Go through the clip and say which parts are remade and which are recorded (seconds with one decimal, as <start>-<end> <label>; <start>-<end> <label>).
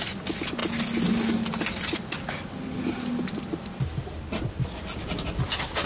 0.0-5.9 recorded